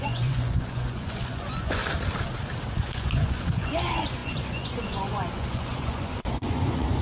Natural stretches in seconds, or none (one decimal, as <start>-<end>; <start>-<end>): 1.8-2.7